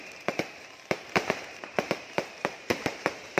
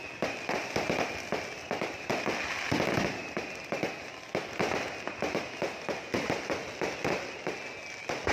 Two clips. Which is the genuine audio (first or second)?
second